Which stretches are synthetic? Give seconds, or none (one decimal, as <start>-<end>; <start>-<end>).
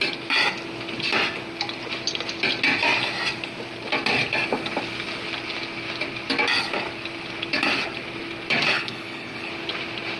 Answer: 8.7-9.5